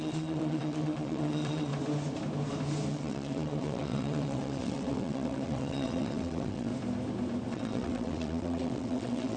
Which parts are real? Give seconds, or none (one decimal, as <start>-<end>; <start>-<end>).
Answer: 1.7-2.9; 6.7-7.5